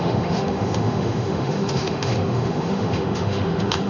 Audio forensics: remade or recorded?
remade